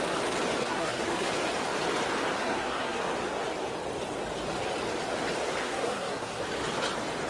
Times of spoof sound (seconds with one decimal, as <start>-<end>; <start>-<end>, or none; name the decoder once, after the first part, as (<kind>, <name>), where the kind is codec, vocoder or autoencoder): 0.6-1.3 (codec, SNAC); 2.4-3.0; 5.6-6.4